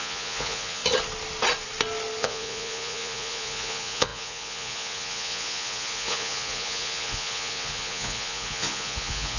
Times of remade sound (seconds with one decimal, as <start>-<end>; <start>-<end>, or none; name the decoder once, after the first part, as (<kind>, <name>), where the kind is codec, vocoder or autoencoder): 0.0-0.8 (vocoder, Vocos); 2.2-9.4